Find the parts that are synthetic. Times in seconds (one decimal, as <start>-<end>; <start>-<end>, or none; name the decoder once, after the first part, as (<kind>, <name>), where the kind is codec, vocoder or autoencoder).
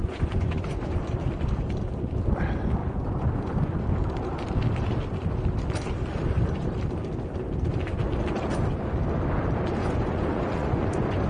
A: 0.0-0.8 (vocoder, Vocos); 2.8-3.8; 9.8-11.3